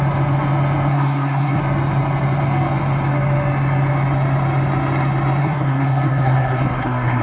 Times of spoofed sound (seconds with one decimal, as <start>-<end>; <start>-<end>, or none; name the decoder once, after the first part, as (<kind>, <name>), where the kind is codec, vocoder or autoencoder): 0.9-1.6 (codec, SNAC); 5.4-7.2